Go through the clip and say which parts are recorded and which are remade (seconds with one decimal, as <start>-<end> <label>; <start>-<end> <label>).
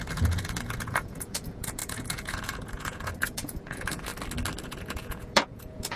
0.0-4.1 remade; 4.1-4.6 recorded; 4.6-6.0 remade